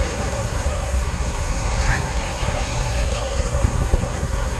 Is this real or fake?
fake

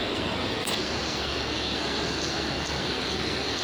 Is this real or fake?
fake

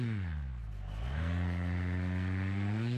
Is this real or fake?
fake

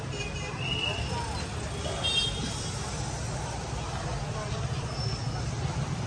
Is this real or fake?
real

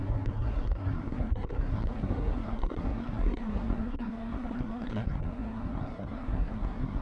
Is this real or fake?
fake